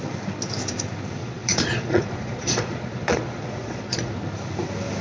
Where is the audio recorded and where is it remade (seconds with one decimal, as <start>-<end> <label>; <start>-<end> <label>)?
0.0-1.2 recorded; 1.2-4.1 remade; 4.1-5.0 recorded